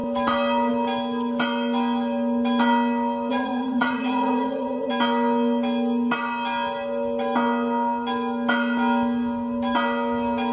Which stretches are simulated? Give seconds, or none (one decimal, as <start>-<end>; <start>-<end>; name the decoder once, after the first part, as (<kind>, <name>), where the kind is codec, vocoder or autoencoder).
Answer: 3.3-4.9 (vocoder, Vocos)